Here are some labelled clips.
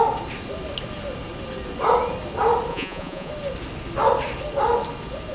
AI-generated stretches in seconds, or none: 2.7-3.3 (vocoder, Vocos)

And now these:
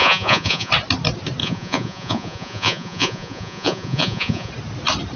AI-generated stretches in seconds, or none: 0.0-0.7 (vocoder, Vocos); 1.4-4.5

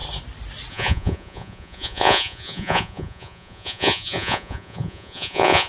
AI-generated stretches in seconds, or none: 0.7-5.7 (vocoder, Vocos)